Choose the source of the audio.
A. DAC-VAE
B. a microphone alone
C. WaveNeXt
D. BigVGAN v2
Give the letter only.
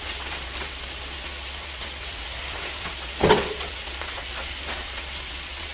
C